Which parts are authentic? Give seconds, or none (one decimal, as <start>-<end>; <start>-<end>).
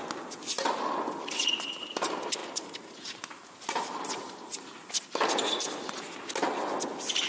0.0-2.4; 5.1-7.3